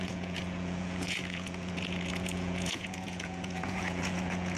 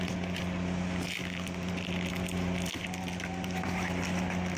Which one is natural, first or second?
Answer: second